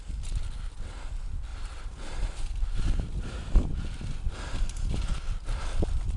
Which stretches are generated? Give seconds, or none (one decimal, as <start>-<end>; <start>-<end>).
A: 1.5-3.3